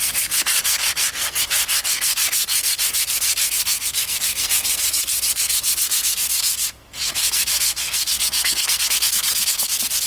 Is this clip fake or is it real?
fake